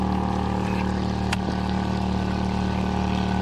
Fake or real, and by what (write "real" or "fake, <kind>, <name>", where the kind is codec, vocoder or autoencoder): real